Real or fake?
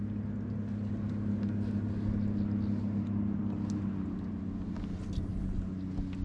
real